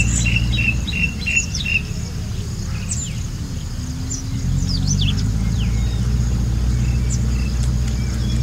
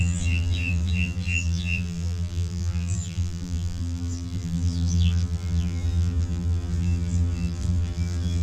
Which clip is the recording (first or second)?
first